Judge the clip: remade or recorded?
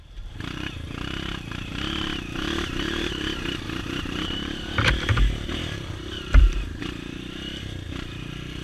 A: remade